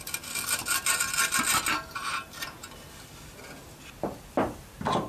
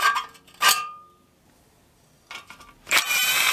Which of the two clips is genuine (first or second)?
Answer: first